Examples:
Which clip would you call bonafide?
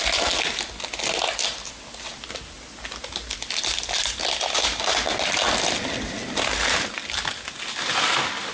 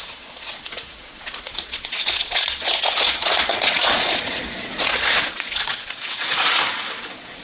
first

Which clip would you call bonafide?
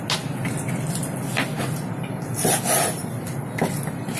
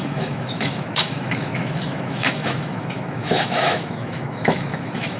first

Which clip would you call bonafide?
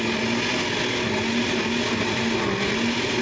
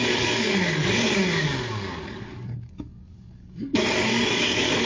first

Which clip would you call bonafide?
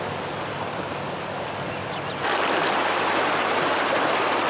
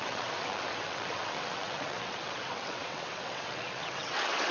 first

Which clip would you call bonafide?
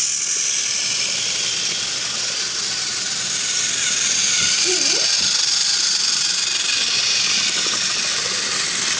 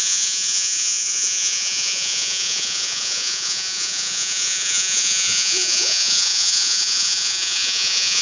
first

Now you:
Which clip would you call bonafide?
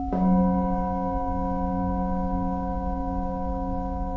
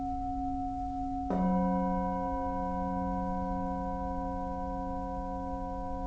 second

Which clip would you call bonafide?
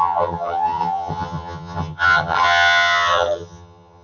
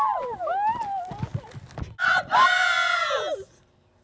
second